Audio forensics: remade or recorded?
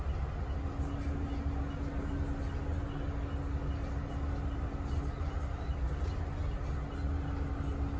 recorded